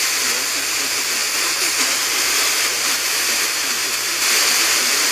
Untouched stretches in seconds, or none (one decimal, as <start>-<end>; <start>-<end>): 0.0-1.2; 4.3-5.1